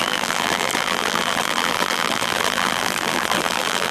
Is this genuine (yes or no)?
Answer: no